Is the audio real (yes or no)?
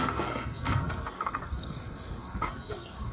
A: no